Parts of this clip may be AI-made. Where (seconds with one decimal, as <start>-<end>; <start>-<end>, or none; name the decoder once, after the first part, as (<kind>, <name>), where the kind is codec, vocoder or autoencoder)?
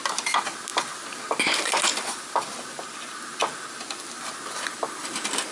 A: 4.7-5.5 (vocoder, BigVGAN v2)